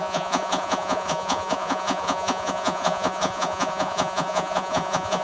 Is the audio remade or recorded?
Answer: remade